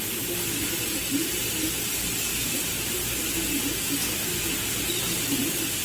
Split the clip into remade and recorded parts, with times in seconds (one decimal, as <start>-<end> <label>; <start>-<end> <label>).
0.0-1.0 recorded; 1.0-1.9 remade; 1.9-2.3 recorded; 2.3-3.1 remade; 3.1-4.0 recorded; 4.0-5.2 remade; 5.2-5.8 recorded